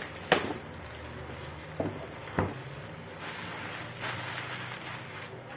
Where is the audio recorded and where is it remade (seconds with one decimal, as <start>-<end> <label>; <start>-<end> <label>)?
0.0-5.6 recorded